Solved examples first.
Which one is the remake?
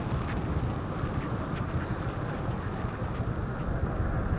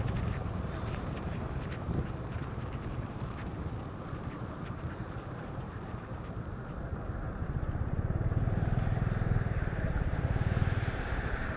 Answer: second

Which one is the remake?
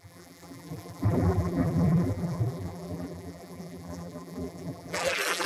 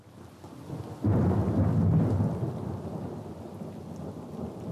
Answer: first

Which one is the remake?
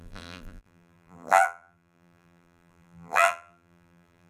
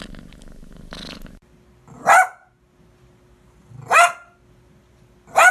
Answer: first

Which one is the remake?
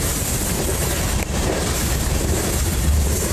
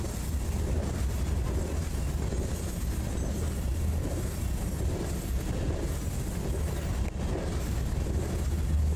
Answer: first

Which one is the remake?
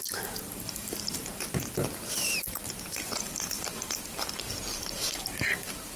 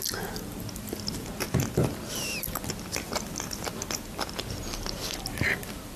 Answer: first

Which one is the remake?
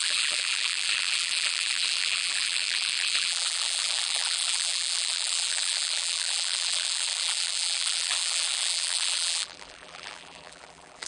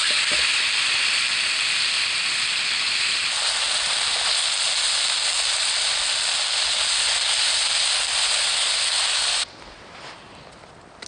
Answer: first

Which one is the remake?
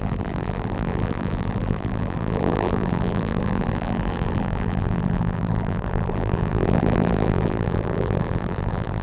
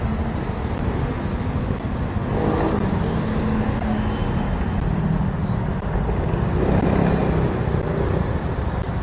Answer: first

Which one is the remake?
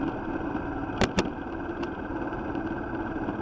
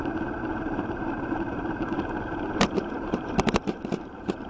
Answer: second